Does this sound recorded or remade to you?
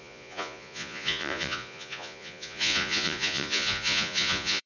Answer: remade